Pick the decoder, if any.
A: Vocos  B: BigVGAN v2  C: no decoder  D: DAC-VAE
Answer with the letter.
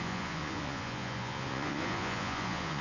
A